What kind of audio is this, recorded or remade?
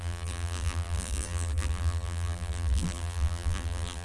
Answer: remade